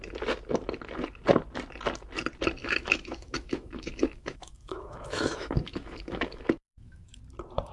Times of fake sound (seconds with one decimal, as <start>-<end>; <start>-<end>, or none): 2.6-7.2